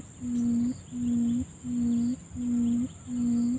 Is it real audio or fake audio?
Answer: real